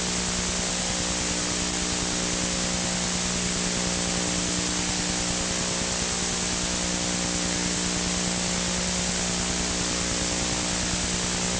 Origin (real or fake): real